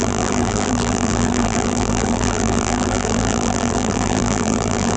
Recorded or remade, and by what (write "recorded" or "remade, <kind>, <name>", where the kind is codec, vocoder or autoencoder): remade, vocoder, BigVGAN v2